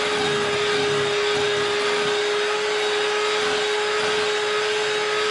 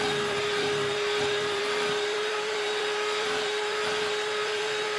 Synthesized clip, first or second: second